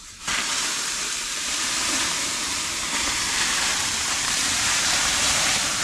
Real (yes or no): no